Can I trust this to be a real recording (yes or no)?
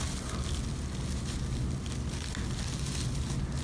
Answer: yes